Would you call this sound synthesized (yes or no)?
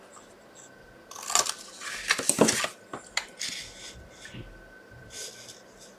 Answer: no